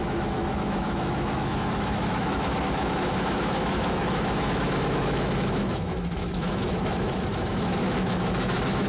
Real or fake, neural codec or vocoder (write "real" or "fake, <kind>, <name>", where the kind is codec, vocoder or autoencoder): fake, autoencoder, DAC-VAE